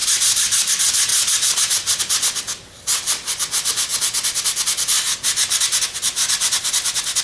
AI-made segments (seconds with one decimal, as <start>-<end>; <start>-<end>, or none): none